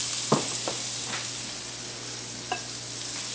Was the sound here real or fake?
real